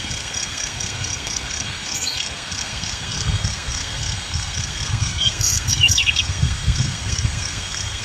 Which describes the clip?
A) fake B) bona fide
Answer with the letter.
A